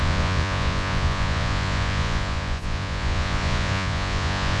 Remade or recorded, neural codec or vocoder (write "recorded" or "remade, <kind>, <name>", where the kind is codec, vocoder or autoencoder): remade, vocoder, Vocos